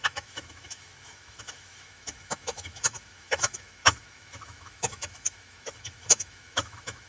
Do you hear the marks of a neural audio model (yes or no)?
yes